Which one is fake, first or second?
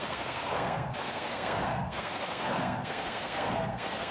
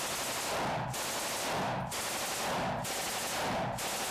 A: first